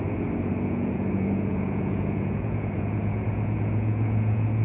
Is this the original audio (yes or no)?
no